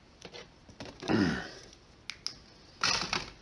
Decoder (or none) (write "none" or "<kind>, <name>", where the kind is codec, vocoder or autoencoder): none